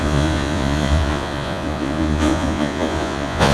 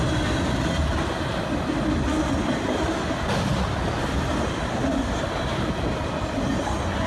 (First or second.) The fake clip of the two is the first